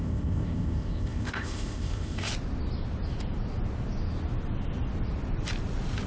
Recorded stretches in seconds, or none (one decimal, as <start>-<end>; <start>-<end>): 2.3-6.1